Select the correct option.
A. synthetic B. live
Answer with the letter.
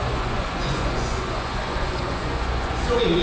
A